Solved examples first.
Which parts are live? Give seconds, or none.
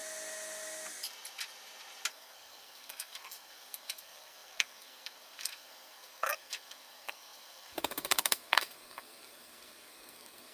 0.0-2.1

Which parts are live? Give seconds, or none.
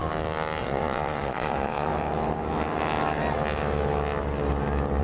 0.0-0.6; 1.9-5.0